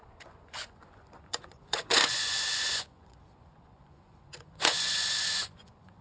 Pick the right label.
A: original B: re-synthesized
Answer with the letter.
B